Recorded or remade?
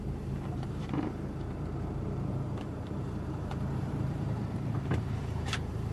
remade